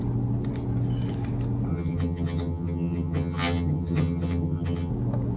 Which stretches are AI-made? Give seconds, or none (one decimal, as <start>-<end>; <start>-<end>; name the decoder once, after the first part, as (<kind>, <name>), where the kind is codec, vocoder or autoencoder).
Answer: 1.7-4.9 (vocoder, HiFi-GAN)